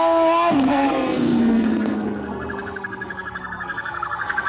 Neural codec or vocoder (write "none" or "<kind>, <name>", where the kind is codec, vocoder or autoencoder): codec, SNAC